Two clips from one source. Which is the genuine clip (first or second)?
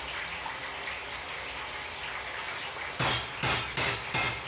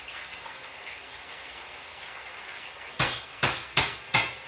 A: first